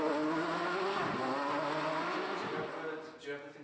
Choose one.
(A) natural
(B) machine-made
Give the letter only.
A